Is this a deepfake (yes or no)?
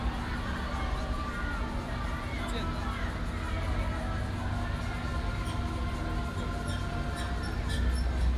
no